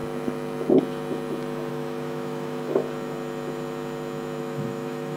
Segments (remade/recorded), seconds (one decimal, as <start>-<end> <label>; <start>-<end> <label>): 0.0-1.7 recorded; 1.7-2.8 remade; 2.8-4.4 recorded; 4.4-5.2 remade